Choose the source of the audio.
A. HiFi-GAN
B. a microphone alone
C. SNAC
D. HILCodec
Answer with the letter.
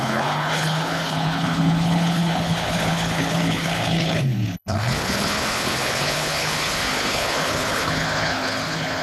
D